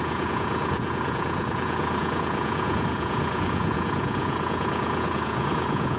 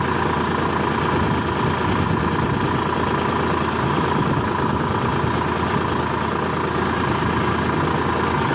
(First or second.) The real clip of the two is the second